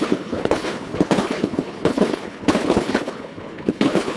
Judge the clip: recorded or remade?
remade